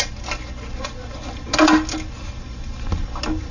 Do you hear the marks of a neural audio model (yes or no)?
no